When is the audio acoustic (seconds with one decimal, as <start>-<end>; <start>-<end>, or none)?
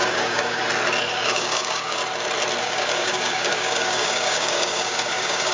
0.6-1.1; 2.0-2.6